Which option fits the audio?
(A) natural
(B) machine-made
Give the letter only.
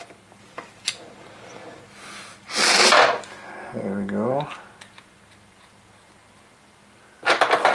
A